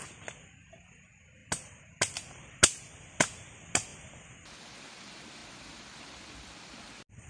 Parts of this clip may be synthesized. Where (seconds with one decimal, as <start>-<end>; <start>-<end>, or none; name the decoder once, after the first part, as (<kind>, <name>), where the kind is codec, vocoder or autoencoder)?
none